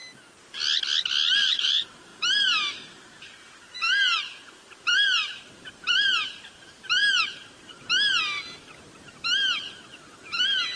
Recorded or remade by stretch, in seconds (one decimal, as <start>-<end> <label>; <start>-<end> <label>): 0.0-1.5 recorded; 1.5-10.8 remade